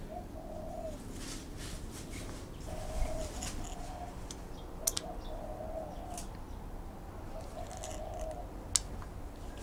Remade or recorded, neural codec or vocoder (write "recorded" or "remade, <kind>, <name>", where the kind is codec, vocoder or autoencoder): recorded